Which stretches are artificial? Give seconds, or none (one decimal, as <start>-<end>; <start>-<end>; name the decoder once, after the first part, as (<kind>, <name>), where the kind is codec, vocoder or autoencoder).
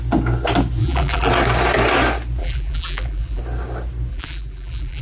0.8-1.3 (vocoder, BigVGAN v2); 2.4-3.4; 4.1-5.0